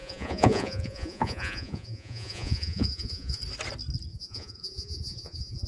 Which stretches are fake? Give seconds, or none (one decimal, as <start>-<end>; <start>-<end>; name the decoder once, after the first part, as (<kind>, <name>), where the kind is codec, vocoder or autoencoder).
0.0-3.4 (vocoder, Vocos); 4.1-5.7